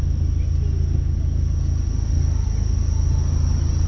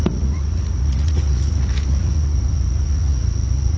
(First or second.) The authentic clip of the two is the first